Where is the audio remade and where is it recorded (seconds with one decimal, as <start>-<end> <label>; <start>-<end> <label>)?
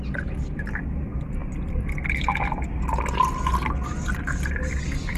0.0-5.2 recorded